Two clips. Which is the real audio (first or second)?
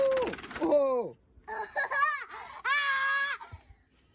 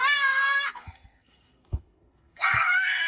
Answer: first